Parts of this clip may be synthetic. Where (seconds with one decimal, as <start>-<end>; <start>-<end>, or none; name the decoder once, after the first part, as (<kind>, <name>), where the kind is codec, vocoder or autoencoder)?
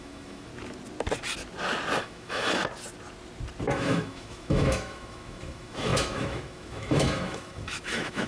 0.0-0.5 (autoencoder, DAC-VAE); 2.0-2.6; 3.7-8.3